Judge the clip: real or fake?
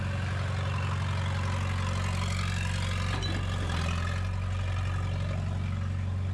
real